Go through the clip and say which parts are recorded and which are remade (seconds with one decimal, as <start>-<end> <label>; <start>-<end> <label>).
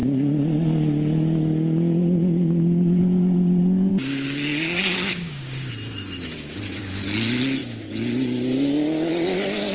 0.0-3.9 recorded; 3.9-5.7 remade; 5.7-6.3 recorded; 6.3-6.8 remade; 6.8-9.7 recorded